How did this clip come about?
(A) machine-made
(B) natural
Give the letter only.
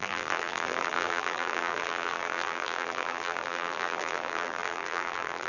A